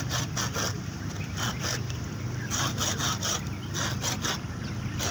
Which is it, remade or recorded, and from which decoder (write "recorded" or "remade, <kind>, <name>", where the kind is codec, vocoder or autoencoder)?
recorded